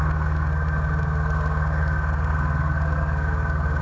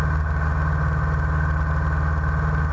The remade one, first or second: first